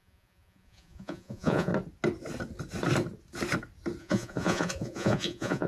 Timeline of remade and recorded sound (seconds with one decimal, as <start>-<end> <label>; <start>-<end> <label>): 0.0-1.7 remade; 1.7-4.0 recorded; 4.0-5.7 remade